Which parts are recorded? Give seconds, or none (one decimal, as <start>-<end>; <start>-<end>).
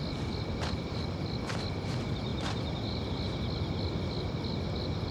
0.0-5.1